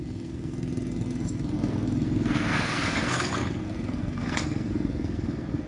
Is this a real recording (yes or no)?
no